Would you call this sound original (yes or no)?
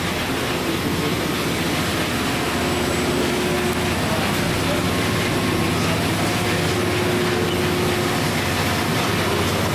yes